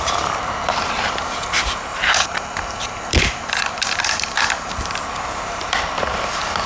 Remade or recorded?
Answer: remade